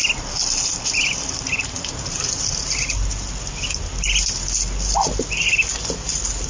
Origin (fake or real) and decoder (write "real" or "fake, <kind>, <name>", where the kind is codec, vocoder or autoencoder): real